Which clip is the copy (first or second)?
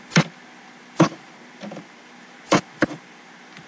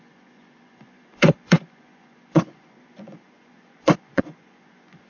second